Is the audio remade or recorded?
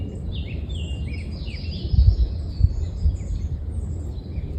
recorded